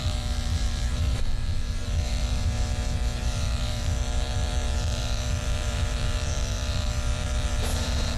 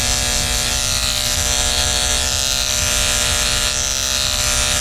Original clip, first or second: second